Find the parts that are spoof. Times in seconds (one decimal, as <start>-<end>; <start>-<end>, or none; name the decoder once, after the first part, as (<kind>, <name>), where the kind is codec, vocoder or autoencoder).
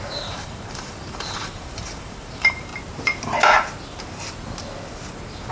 0.0-2.7 (vocoder, BigVGAN v2)